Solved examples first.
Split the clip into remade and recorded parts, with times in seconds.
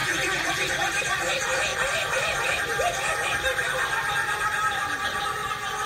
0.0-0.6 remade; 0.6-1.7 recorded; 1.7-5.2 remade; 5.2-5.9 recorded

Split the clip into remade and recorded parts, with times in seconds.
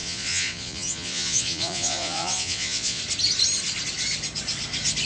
0.0-3.0 remade; 3.0-5.0 recorded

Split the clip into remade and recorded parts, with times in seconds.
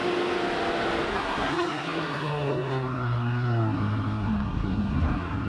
0.0-1.1 recorded; 1.1-5.5 remade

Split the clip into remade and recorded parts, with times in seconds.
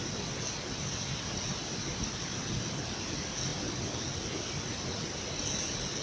0.0-6.0 recorded